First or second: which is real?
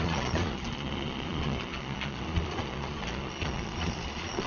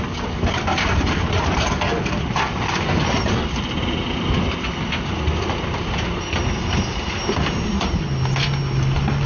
second